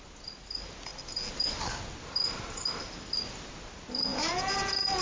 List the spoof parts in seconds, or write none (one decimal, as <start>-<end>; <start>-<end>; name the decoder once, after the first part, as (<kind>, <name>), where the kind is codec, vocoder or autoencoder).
4.1-5.0 (vocoder, Vocos)